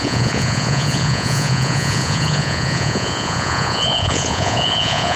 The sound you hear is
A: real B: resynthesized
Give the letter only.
B